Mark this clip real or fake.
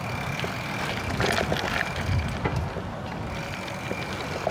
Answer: real